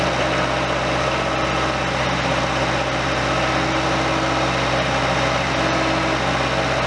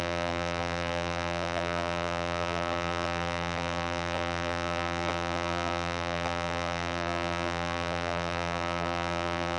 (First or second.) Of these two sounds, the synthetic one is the second